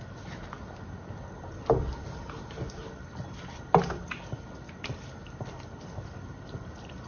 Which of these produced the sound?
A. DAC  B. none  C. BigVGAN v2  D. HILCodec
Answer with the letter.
B